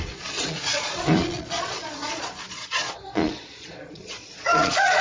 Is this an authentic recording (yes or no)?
no